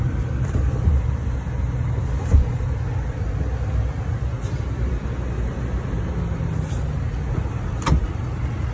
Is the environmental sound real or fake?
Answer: real